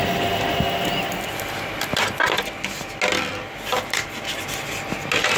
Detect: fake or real real